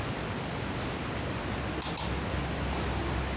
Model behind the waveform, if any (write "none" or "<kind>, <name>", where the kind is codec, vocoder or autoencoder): none